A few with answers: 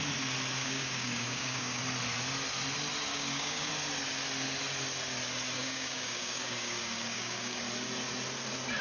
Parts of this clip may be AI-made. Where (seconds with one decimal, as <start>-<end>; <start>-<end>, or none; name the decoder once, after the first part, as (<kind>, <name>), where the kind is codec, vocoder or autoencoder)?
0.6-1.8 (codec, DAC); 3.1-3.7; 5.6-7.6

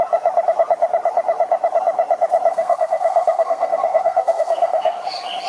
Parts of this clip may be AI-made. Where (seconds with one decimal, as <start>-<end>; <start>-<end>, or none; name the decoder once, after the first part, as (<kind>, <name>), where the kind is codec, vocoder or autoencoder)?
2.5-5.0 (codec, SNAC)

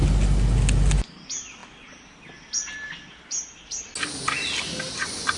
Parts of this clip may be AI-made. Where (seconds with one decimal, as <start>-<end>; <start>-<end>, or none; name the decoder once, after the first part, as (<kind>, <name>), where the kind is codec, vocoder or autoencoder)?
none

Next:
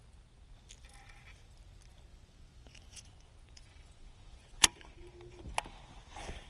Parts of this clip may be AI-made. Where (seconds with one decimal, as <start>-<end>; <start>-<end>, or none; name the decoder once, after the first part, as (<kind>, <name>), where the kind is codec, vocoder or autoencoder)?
2.1-5.1 (vocoder, Vocos)